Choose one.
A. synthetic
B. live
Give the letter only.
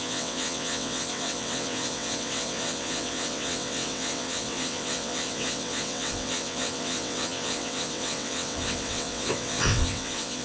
A